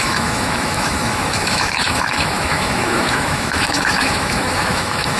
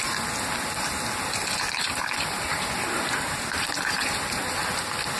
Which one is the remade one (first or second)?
first